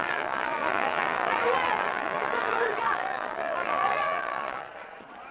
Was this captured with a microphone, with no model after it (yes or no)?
no